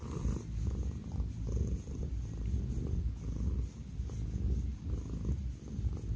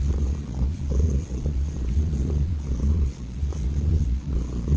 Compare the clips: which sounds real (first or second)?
first